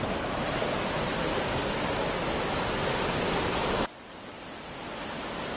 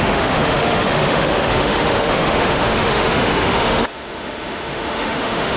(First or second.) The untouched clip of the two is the first